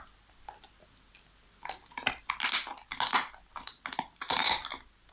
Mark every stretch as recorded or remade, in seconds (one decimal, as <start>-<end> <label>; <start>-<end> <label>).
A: 0.0-5.1 recorded